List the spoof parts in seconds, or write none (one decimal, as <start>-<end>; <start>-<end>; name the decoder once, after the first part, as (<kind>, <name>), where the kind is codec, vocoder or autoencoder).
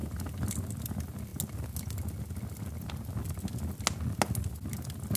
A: none